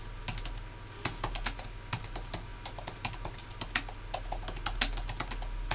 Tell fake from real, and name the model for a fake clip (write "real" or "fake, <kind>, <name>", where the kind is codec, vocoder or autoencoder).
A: real